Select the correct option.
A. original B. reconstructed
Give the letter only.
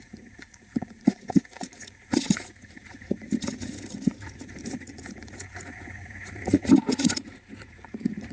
B